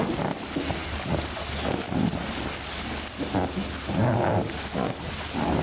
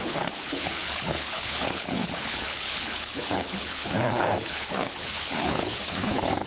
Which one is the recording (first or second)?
first